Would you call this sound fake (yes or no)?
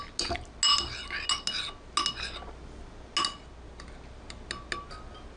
no